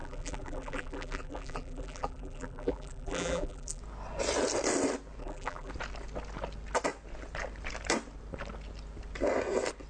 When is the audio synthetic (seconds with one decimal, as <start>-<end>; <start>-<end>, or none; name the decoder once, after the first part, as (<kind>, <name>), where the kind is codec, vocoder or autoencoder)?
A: 0.0-3.8 (vocoder, BigVGAN v2); 5.2-5.7